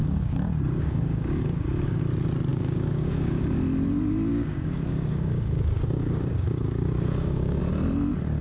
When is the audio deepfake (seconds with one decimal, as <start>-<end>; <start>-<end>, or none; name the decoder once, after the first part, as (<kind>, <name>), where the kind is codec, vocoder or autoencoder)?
0.0-2.0 (codec, DAC); 2.5-3.4; 4.3-7.6